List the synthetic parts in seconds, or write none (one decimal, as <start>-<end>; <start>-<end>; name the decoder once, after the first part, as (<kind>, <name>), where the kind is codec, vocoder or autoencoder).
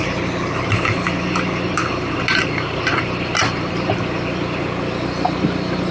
none